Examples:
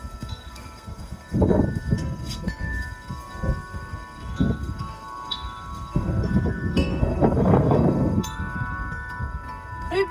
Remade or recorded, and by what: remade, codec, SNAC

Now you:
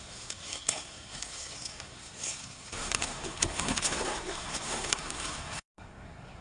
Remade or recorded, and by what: remade, codec, SNAC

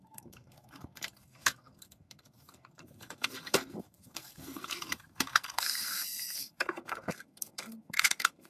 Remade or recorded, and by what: remade, codec, SNAC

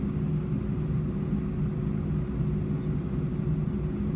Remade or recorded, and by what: recorded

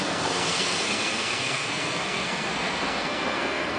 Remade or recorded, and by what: remade, codec, SNAC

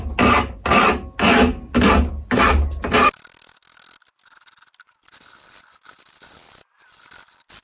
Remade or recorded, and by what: recorded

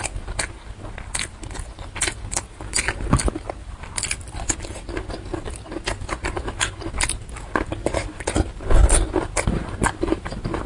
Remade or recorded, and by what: recorded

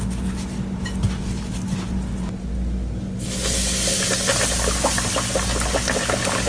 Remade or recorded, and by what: recorded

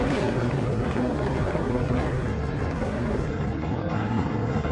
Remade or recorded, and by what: remade, codec, SNAC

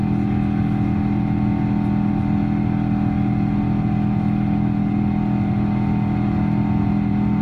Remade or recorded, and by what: recorded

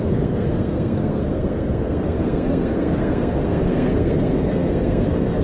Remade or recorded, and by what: remade, codec, SNAC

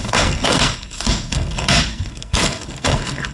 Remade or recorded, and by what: remade, codec, SNAC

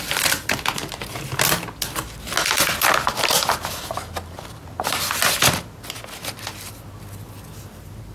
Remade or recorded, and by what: recorded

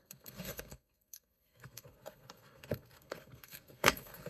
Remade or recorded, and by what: remade, codec, SNAC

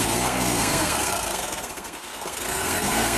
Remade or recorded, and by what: remade, codec, SNAC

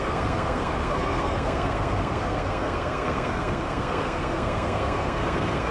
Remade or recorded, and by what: remade, codec, SNAC